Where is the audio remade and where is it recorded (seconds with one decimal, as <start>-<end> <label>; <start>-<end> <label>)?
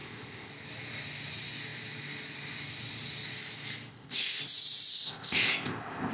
0.0-0.5 remade; 0.5-3.9 recorded; 3.9-4.4 remade; 4.4-4.9 recorded; 4.9-6.1 remade